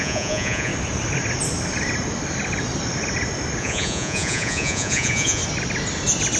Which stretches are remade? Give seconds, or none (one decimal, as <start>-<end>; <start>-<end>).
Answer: 0.0-0.7; 3.6-5.4